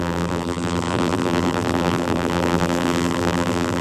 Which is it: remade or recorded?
remade